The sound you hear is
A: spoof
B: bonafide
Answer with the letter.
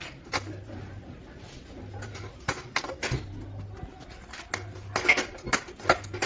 B